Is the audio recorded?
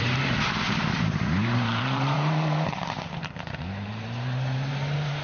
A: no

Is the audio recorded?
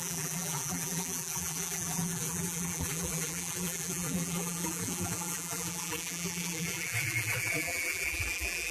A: no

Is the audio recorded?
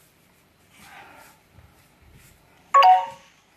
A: yes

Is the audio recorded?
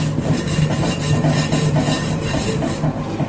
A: no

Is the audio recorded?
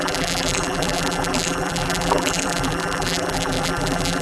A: no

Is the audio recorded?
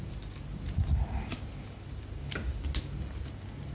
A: yes